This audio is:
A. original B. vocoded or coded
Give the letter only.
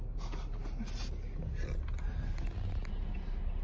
A